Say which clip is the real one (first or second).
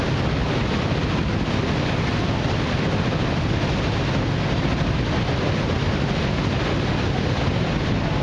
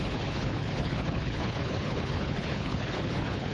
first